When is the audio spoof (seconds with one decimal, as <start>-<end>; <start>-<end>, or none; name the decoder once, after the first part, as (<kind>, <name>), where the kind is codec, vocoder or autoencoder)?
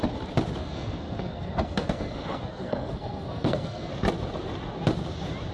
0.6-3.9 (codec, SNAC)